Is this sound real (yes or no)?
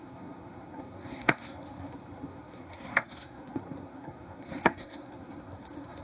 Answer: no